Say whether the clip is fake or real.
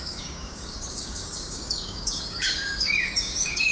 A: fake